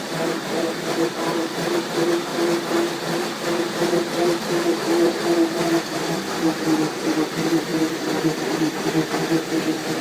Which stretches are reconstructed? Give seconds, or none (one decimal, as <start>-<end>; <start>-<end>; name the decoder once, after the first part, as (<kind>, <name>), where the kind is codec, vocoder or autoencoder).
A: 0.0-2.3 (vocoder, BigVGAN v2); 3.6-10.0